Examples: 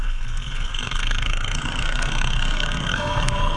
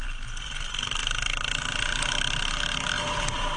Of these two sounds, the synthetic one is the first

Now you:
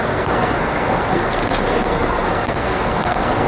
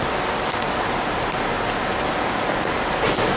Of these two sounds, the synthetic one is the first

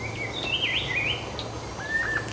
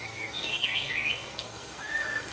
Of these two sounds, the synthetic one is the second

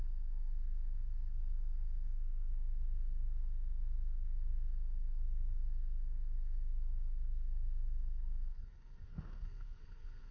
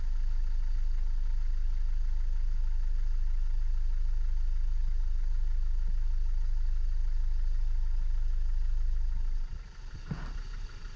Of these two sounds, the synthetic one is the first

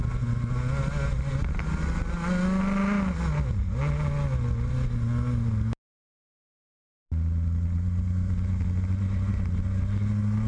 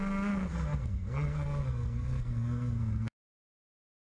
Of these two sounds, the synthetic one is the second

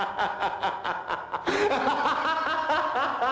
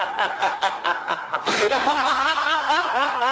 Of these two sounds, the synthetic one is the second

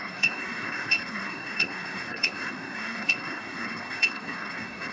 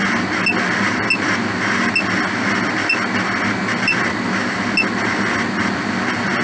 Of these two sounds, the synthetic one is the first